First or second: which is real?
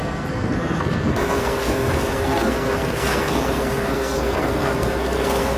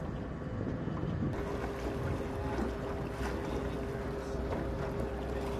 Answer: second